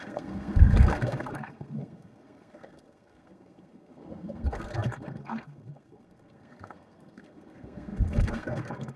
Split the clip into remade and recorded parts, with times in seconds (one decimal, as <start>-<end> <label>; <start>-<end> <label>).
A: 0.0-9.0 remade